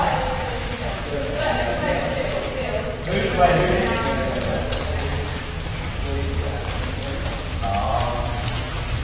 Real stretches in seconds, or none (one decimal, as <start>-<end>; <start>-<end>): 2.2-9.0